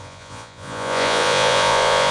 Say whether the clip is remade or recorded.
remade